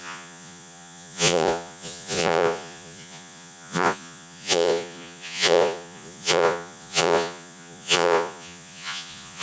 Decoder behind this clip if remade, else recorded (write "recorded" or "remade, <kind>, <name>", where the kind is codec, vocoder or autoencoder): remade, vocoder, Vocos